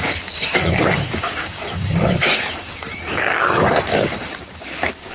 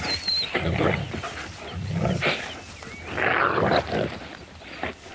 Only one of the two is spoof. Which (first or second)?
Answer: first